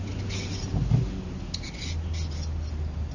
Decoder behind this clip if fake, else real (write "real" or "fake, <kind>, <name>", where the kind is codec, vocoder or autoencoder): real